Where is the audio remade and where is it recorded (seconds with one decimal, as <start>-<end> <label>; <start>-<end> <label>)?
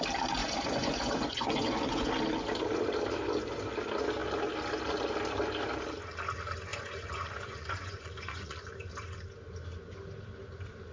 0.0-0.4 recorded; 0.4-2.1 remade; 2.1-6.7 recorded; 6.7-8.7 remade; 8.7-10.9 recorded